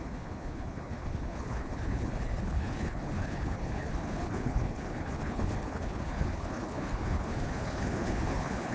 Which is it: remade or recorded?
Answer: remade